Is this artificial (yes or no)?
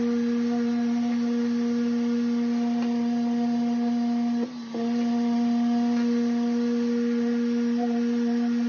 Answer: no